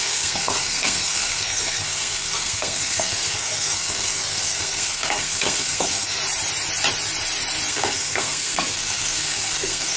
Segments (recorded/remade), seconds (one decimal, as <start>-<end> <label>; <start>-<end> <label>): 0.0-6.2 remade; 6.2-7.7 recorded; 7.7-10.0 remade